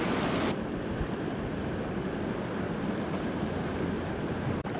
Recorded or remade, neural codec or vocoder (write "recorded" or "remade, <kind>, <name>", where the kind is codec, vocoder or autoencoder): recorded